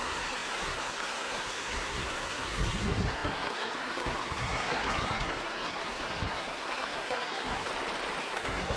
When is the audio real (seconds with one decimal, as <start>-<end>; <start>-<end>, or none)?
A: 7.7-8.2